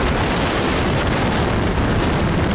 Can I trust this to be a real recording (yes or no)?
no